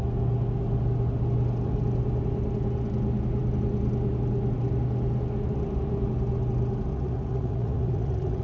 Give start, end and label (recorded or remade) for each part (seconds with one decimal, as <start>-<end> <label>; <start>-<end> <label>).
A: 0.0-6.9 recorded; 6.9-8.4 remade